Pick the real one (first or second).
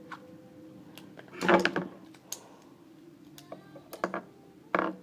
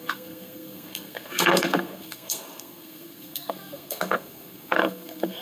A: first